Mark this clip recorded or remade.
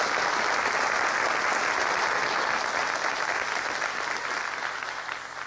recorded